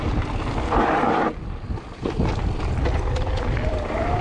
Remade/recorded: recorded